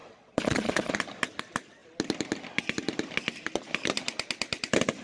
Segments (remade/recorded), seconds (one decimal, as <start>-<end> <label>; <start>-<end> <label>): 0.0-0.9 remade; 0.9-5.0 recorded